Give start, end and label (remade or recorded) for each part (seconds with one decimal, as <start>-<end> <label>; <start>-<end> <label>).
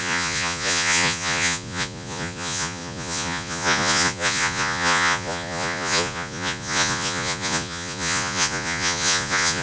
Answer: 0.0-9.6 remade